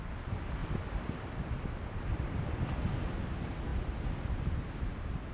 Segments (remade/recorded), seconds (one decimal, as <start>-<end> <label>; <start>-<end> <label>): 0.0-0.6 recorded; 0.6-2.5 remade; 2.5-5.3 recorded